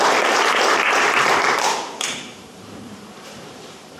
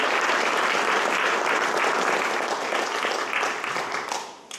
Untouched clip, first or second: second